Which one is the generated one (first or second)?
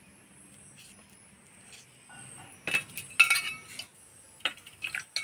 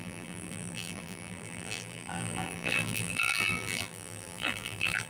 second